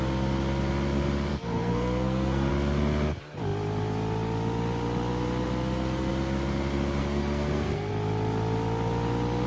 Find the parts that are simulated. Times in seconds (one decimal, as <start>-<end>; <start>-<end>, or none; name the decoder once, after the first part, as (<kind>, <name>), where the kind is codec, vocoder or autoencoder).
1.3-2.5 (codec, SNAC); 7.0-7.9